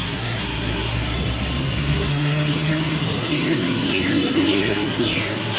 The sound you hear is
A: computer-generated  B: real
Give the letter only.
A